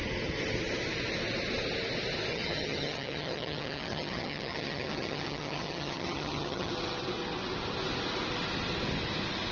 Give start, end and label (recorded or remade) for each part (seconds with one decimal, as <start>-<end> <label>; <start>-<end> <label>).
0.0-2.3 recorded; 2.3-6.7 remade; 6.7-9.5 recorded